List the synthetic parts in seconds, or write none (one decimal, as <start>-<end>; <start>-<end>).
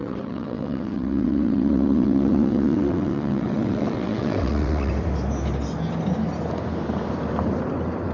0.0-4.9